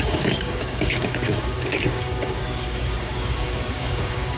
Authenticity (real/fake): fake